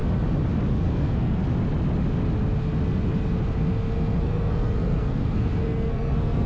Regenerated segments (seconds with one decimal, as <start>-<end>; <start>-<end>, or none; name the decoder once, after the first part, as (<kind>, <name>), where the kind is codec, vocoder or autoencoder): 0.7-1.4 (codec, SNAC); 4.2-6.5